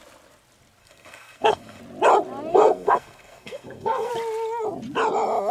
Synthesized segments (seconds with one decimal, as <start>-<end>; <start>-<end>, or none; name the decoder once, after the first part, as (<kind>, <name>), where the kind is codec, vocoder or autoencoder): 0.8-1.8 (codec, SNAC); 2.5-4.1